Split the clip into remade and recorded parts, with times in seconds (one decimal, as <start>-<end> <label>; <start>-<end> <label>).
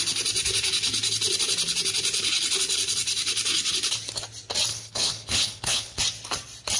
0.0-4.7 recorded; 4.7-6.0 remade; 6.0-6.8 recorded